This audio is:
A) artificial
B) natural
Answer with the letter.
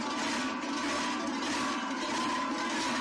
B